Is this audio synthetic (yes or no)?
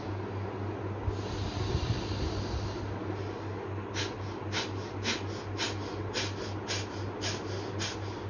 no